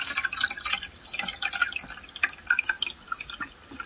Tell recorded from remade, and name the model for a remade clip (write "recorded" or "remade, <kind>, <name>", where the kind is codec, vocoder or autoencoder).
recorded